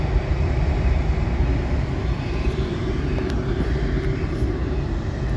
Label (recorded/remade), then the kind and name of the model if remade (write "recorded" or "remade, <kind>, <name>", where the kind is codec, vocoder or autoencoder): remade, vocoder, BigVGAN v2